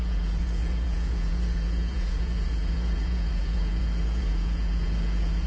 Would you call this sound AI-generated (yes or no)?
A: yes